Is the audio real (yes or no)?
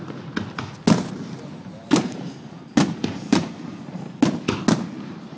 yes